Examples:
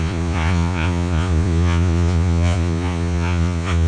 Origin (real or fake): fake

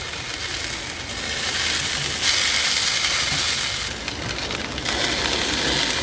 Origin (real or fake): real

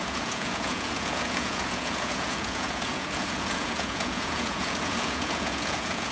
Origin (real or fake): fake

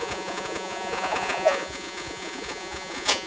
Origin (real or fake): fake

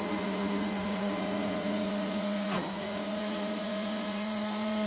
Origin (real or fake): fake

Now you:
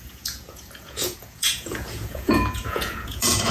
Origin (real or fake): fake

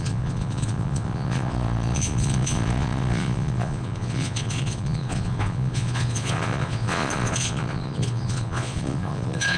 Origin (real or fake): fake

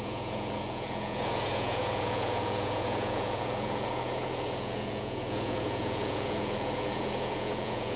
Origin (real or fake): fake